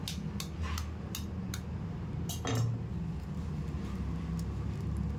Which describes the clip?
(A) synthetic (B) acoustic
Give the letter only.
B